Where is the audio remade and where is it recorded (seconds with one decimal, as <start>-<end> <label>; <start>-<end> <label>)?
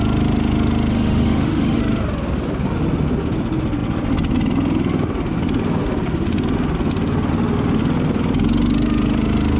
0.0-0.9 recorded; 0.9-1.8 remade; 1.8-9.6 recorded